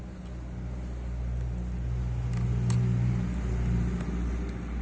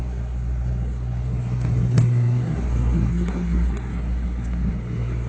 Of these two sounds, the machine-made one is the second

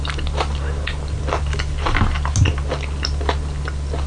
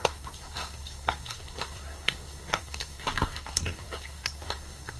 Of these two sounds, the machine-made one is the second